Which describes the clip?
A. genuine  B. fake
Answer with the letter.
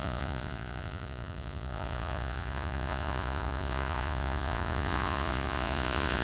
B